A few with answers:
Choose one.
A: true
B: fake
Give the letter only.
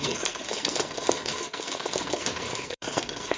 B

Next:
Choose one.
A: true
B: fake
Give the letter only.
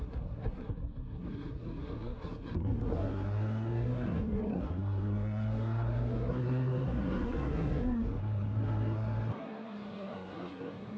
B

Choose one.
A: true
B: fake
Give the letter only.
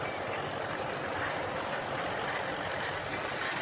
A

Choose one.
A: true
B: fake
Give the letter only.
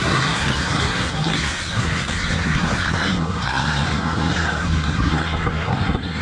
B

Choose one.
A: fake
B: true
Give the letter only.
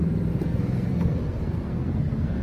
A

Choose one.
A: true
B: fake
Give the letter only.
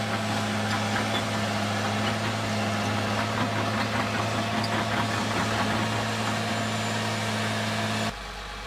A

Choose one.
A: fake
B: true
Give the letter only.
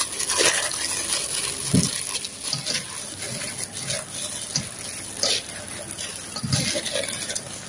B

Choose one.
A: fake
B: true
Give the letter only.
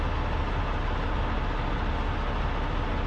B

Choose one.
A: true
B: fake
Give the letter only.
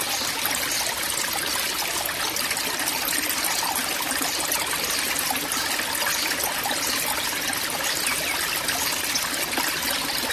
A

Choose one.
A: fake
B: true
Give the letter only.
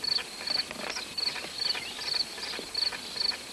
B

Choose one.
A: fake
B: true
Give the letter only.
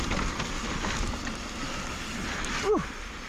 B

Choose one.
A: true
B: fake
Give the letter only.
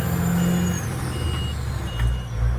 A